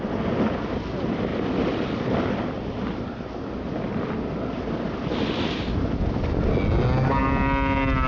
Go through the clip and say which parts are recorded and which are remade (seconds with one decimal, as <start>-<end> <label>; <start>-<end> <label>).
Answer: 0.0-8.1 recorded